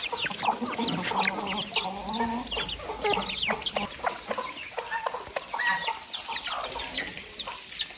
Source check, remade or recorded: recorded